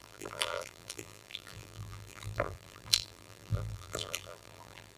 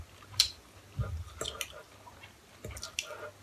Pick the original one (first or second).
second